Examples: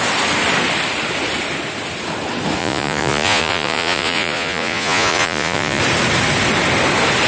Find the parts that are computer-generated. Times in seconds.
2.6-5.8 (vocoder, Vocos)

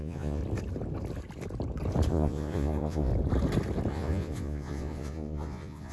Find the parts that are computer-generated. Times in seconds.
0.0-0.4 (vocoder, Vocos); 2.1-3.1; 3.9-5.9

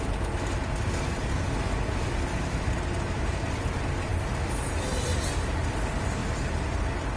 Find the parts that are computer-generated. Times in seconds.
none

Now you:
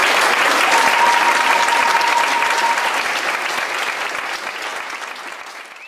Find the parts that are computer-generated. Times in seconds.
none